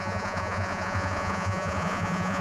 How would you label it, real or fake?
fake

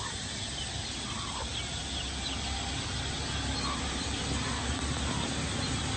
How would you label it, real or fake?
real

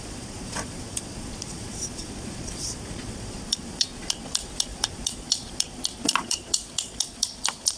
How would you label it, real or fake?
fake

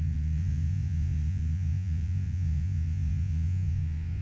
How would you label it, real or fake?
fake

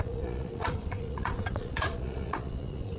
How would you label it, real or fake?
fake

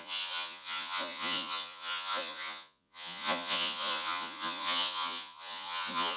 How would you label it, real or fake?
fake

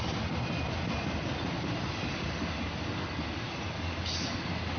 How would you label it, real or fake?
real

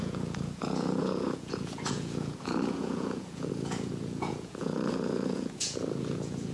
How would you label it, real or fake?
fake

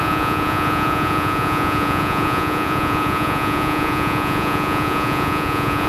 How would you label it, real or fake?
fake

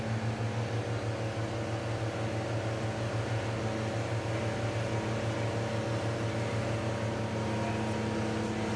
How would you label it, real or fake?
real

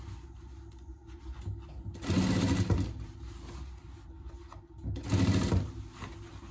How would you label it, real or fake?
real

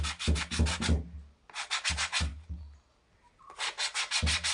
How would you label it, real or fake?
real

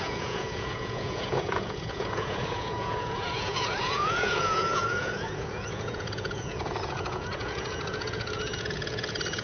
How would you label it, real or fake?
fake